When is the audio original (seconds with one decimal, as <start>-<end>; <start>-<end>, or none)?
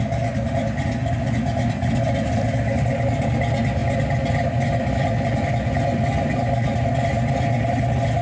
0.0-8.2